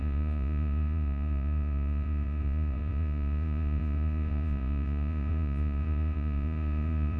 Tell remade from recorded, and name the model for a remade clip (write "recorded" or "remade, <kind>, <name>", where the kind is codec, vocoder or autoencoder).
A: remade, vocoder, Vocos